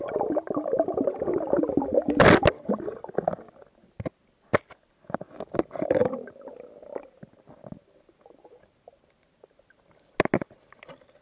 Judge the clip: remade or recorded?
recorded